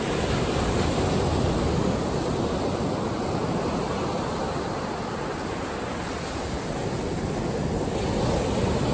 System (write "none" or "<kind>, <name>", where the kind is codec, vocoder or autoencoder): none